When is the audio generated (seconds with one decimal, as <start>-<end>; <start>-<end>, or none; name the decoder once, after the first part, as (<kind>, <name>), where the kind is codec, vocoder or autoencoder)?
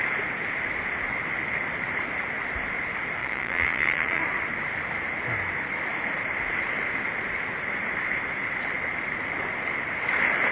3.2-4.2 (vocoder, Vocos)